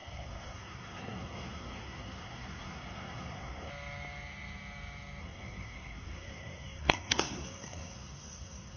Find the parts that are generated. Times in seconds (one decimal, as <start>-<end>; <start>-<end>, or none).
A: 0.0-3.7; 5.2-8.8